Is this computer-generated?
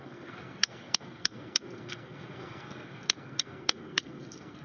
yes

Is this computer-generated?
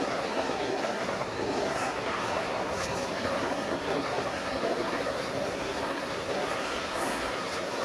yes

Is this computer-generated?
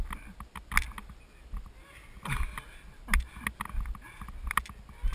no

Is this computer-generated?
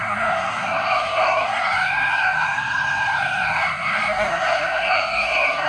yes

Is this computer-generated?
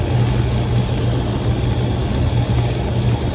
no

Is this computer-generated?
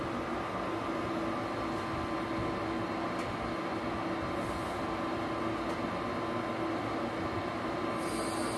no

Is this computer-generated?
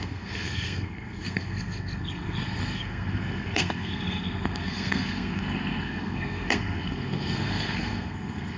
yes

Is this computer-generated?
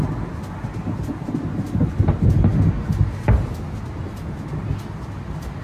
no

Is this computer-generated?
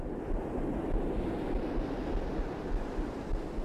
no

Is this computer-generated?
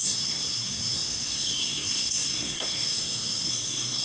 yes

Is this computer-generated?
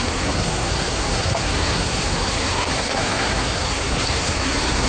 yes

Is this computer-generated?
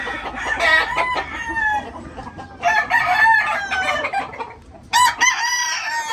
no